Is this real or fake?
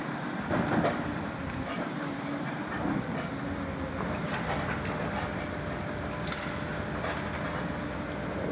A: real